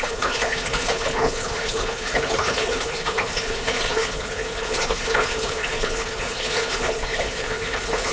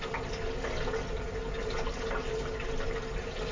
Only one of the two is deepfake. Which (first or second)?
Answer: first